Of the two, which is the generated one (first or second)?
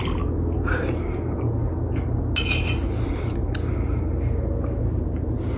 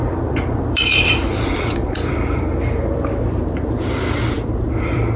second